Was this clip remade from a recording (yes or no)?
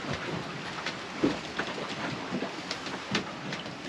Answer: no